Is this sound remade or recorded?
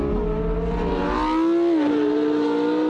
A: recorded